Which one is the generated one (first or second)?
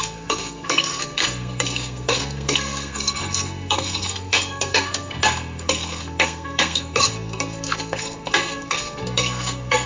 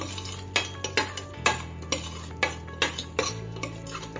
first